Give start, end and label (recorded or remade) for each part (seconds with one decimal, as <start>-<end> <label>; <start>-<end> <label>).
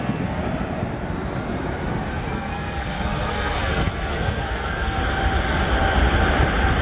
0.0-0.4 remade; 0.4-2.3 recorded; 2.3-5.0 remade; 5.0-6.8 recorded